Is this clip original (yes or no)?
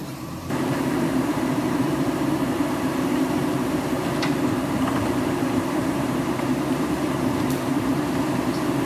no